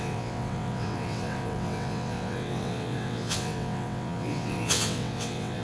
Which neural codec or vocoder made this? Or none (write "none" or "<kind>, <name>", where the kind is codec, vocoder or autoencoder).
vocoder, WaveNeXt